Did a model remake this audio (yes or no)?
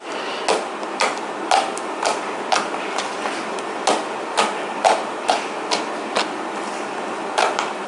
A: no